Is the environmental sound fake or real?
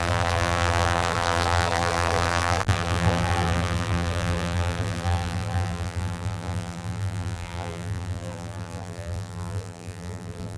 fake